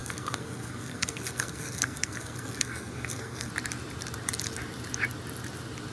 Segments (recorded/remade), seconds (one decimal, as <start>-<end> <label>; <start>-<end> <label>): 0.0-3.5 remade; 3.5-5.9 recorded